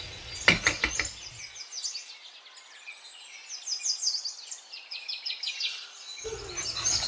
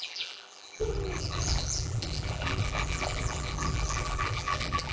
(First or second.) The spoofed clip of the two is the second